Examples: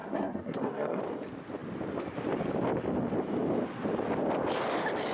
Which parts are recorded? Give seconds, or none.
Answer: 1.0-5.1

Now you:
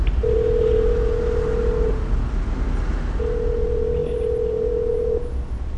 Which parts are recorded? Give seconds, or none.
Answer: 0.0-5.8

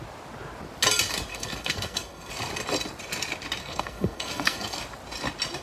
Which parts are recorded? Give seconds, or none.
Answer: 0.0-1.3; 2.3-3.6; 4.8-5.6

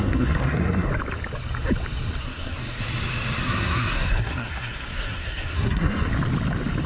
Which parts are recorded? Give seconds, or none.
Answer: 0.9-2.2; 2.6-3.4; 6.1-6.9

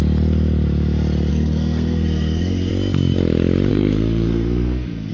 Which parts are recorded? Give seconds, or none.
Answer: 0.0-1.3; 2.7-3.7

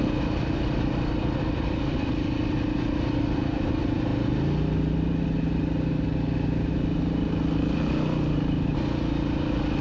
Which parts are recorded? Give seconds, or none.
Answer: 0.0-9.8

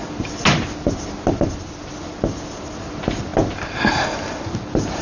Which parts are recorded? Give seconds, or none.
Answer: 0.0-5.0